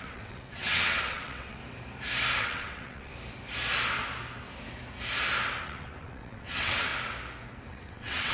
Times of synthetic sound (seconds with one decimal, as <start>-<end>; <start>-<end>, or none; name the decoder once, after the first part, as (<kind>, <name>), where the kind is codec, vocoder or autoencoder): 0.0-1.6 (vocoder, WaveNeXt); 2.4-3.1; 5.6-6.9; 7.7-8.3